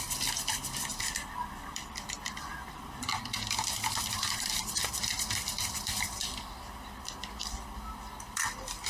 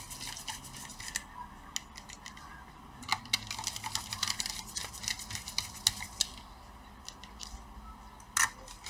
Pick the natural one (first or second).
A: second